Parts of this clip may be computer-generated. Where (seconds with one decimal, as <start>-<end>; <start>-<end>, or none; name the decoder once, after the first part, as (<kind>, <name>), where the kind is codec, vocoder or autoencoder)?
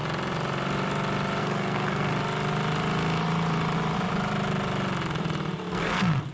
1.4-2.1 (codec, SNAC); 5.7-6.3